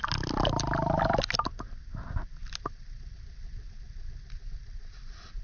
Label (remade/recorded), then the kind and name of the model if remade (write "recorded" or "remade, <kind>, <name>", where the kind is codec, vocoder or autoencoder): recorded